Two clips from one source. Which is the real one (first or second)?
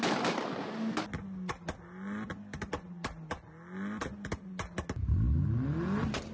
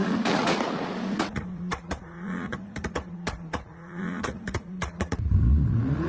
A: first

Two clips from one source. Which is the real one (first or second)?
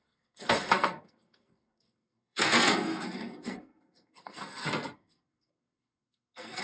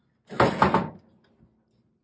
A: second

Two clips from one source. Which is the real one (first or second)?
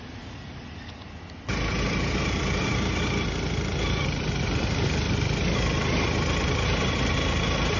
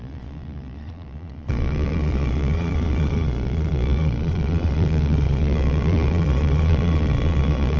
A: first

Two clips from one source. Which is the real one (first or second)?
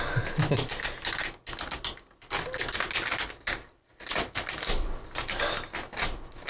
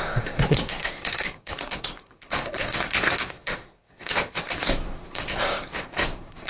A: first